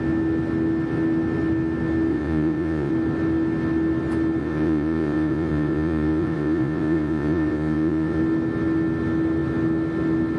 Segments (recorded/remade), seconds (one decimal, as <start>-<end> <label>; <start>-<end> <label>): 0.0-2.1 recorded; 2.1-2.9 remade; 2.9-4.4 recorded; 4.4-8.2 remade; 8.2-10.4 recorded